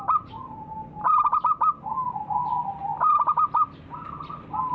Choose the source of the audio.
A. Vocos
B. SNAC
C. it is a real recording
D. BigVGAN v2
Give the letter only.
C